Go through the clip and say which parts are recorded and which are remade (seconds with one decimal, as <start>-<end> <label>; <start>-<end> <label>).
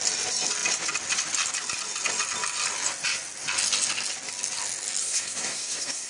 0.0-5.0 recorded; 5.0-6.1 remade